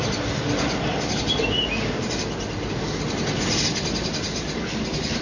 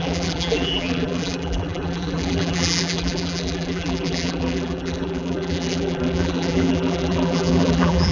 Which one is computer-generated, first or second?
second